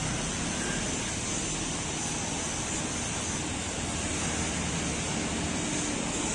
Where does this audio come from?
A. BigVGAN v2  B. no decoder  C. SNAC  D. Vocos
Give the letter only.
B